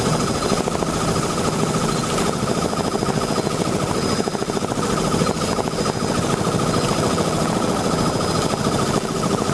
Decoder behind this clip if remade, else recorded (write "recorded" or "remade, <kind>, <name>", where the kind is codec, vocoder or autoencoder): recorded